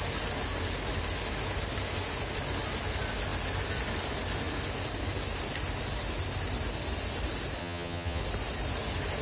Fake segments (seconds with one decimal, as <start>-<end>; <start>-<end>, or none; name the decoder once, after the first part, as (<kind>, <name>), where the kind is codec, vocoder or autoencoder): 7.6-8.2 (vocoder, HiFi-GAN)